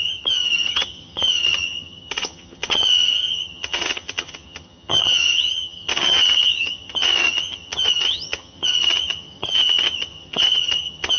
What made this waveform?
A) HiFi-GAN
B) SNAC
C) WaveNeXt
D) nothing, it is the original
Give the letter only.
A